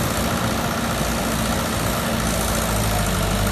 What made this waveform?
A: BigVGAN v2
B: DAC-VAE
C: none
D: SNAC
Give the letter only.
C